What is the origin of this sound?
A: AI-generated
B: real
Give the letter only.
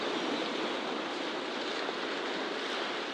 B